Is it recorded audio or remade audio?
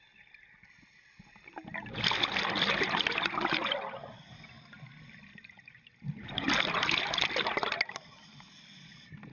recorded